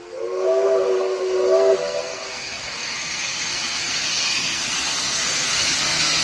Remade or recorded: remade